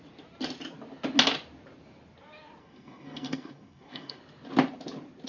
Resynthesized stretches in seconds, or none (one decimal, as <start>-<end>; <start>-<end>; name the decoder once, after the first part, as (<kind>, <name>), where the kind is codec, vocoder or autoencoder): 2.6-4.2 (codec, SNAC)